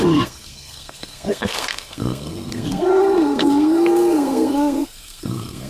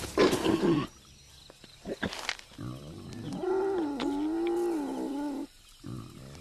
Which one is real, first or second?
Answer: second